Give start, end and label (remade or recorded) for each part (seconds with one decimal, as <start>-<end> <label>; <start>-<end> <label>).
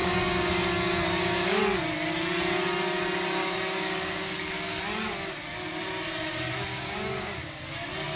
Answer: 0.0-1.6 remade; 1.6-3.4 recorded; 3.4-4.8 remade; 4.8-6.7 recorded; 6.7-7.6 remade; 7.6-8.2 recorded